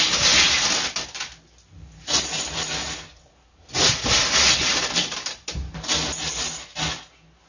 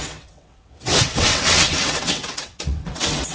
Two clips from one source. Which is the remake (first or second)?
second